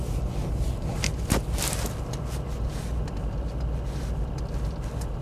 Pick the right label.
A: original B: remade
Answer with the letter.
A